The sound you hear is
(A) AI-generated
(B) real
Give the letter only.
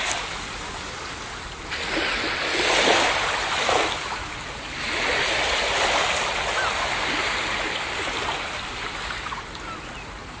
B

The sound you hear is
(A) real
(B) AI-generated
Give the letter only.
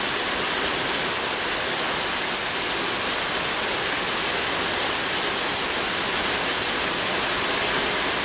A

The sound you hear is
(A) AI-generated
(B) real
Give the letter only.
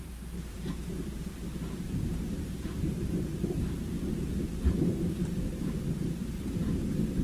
A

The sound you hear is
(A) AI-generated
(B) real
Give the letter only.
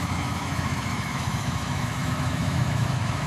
A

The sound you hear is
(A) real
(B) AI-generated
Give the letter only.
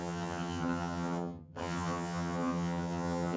B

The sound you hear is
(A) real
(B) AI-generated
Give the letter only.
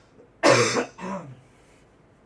A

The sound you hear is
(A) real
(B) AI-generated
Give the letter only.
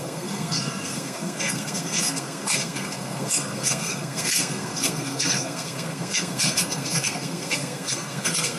B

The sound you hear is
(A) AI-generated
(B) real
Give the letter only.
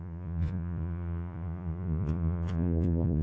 A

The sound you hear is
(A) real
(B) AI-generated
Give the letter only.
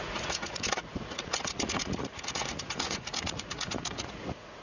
B